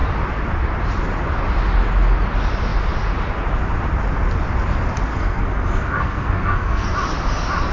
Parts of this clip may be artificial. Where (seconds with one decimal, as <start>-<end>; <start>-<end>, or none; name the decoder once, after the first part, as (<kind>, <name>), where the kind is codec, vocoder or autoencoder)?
5.1-6.9 (codec, SNAC)